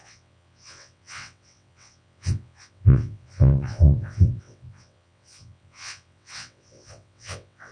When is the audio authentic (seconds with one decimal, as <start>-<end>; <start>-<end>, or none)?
none